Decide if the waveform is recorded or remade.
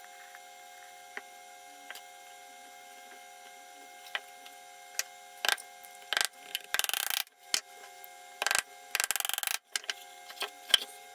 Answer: recorded